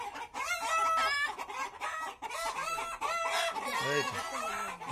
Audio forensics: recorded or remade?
recorded